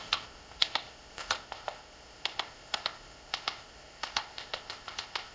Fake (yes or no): yes